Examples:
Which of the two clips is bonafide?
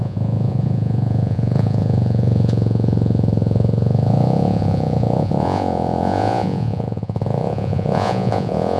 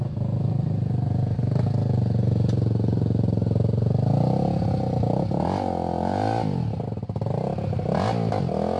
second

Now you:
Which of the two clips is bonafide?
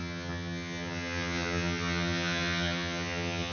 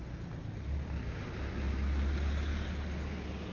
second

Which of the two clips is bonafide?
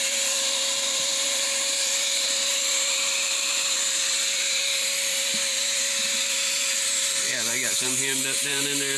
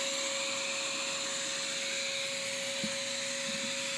second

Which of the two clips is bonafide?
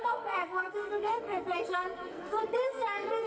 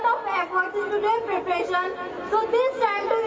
second